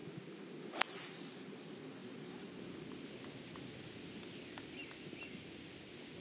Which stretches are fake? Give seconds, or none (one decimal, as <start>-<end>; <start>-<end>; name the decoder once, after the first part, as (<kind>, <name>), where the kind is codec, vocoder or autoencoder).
none